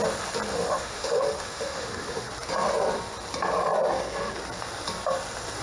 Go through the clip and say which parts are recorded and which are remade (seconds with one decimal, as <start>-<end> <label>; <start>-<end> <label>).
0.0-0.5 recorded; 0.5-2.3 remade; 2.3-5.6 recorded